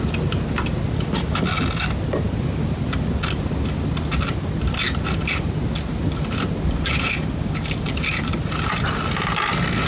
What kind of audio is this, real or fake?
real